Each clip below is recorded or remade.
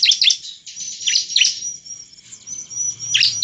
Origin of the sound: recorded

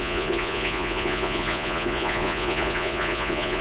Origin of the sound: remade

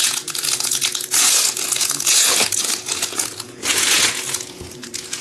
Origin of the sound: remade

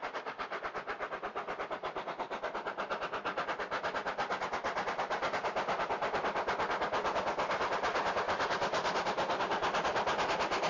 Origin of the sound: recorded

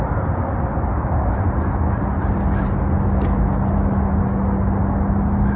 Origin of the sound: recorded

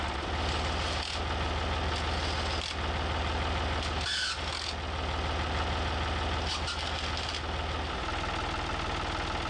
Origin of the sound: recorded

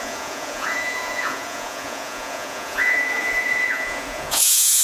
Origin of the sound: remade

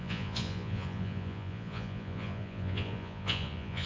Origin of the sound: remade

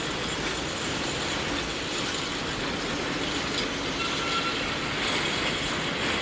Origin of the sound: recorded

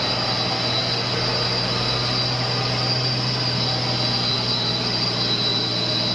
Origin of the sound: recorded